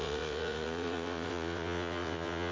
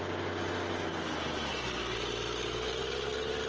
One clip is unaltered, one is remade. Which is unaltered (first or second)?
second